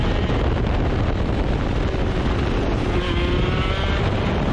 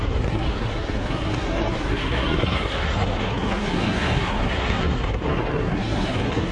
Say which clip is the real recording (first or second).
first